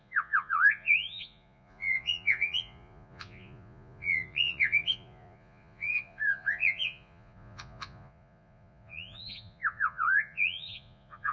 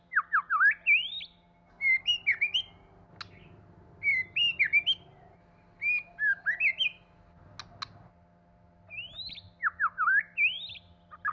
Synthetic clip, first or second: first